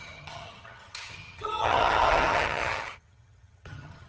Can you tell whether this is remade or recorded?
remade